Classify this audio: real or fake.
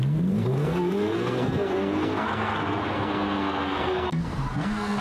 fake